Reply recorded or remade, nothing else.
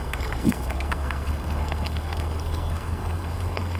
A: remade